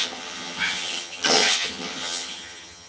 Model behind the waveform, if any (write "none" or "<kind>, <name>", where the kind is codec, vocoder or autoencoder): vocoder, HiFi-GAN